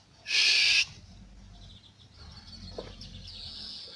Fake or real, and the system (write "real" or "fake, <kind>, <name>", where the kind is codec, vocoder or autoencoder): real